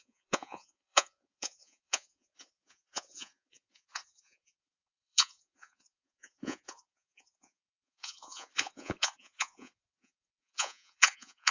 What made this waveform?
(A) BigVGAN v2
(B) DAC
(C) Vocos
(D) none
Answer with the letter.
C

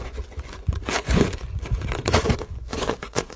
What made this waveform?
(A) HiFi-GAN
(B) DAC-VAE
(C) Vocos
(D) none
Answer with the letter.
C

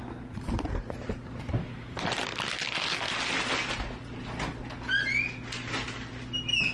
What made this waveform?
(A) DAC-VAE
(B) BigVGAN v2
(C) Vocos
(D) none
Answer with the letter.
D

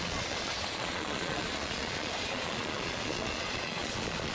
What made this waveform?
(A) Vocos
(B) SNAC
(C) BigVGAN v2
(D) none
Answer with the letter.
A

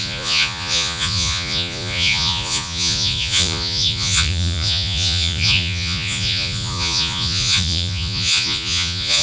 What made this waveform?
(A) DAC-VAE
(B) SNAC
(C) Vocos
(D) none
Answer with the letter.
C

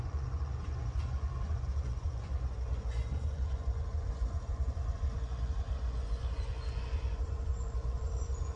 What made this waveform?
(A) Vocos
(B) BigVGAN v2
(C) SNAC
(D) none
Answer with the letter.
A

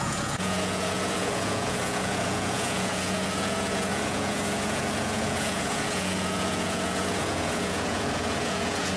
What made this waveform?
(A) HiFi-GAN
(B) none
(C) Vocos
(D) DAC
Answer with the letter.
C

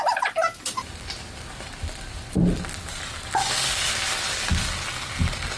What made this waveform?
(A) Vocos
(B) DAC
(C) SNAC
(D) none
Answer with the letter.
D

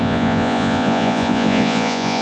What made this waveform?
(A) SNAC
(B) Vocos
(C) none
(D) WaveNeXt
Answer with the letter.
B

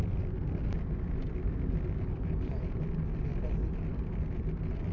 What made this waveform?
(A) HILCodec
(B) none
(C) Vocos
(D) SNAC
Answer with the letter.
B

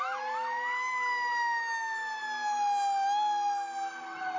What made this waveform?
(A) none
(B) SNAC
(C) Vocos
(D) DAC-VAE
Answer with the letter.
A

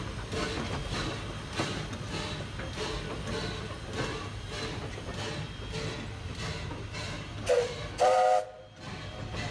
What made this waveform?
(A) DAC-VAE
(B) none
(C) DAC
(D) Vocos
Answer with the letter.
B